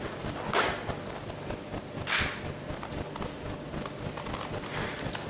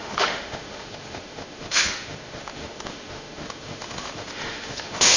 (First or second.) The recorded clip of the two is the first